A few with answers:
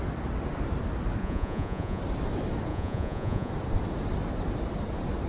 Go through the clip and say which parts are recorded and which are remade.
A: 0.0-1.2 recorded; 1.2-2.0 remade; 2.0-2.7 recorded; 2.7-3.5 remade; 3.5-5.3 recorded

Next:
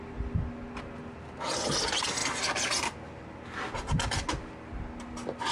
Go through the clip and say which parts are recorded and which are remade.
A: 0.0-5.5 recorded

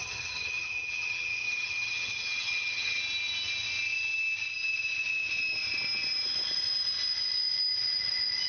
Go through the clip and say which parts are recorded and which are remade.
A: 0.0-3.0 remade; 3.0-8.5 recorded

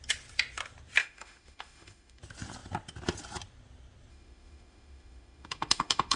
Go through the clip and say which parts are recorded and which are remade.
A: 0.0-1.0 recorded; 1.0-2.2 remade; 2.2-4.1 recorded; 4.1-6.2 remade

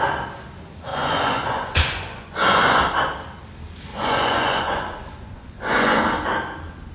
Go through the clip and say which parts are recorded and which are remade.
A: 0.0-0.9 recorded; 0.9-2.8 remade; 2.8-3.9 recorded; 3.9-6.0 remade; 6.0-6.9 recorded